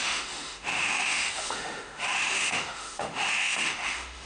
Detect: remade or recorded remade